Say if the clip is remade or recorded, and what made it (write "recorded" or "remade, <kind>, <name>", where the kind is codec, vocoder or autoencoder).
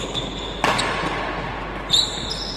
recorded